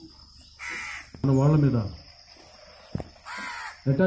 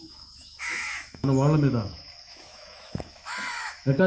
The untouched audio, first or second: first